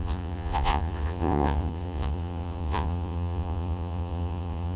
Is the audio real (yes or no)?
no